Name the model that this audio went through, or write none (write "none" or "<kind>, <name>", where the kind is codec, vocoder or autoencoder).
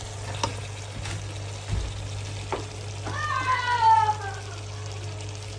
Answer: none